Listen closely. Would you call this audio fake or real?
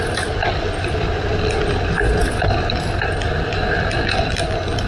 real